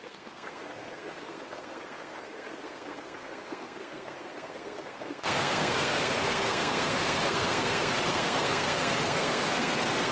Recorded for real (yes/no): no